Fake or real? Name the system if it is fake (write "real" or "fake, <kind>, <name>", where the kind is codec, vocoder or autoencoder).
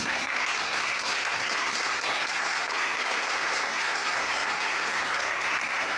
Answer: fake, codec, SNAC